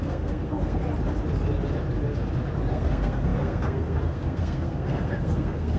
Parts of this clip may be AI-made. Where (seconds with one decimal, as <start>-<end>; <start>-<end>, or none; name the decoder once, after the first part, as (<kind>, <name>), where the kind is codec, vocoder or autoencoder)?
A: 0.0-0.8 (codec, SNAC); 2.7-5.8